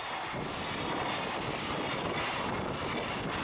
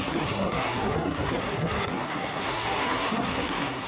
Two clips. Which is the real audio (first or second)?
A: first